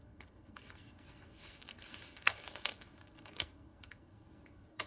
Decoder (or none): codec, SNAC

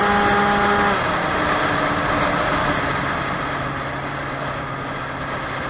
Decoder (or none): none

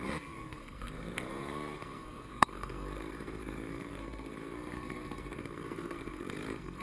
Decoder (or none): codec, SNAC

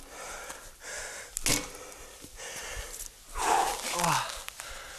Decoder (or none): none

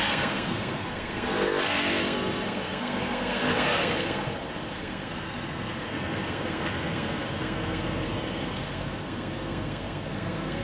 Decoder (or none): codec, SNAC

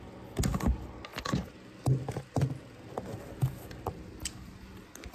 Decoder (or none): none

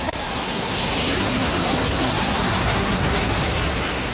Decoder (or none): codec, SNAC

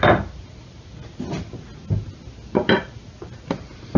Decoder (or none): none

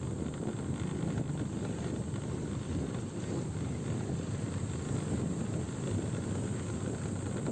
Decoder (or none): none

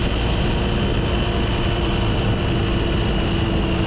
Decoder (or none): none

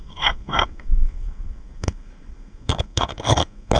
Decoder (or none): codec, SNAC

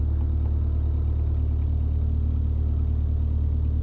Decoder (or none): none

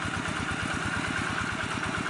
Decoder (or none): none